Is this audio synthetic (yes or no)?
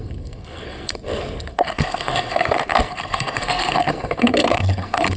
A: yes